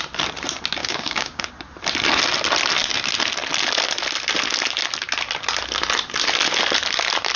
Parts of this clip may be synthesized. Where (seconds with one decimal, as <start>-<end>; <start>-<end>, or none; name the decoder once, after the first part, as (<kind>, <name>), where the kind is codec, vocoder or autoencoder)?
0.8-1.5 (codec, DAC)